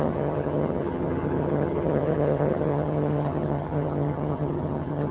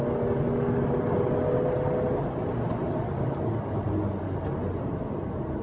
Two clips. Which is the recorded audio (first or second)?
second